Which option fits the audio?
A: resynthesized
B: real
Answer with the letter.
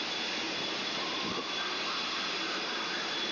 B